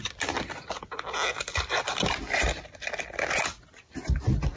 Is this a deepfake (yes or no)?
no